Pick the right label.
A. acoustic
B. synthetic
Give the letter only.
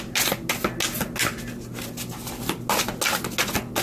A